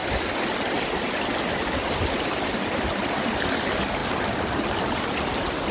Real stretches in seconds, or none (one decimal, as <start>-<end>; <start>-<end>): 0.0-5.7